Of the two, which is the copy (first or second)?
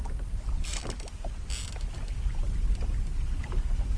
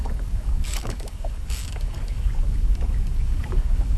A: second